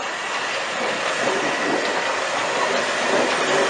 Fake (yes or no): yes